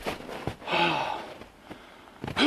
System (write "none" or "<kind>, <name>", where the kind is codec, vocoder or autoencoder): none